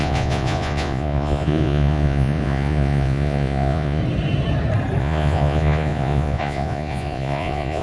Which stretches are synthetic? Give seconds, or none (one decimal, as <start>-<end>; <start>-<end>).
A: 0.0-4.0; 5.0-7.8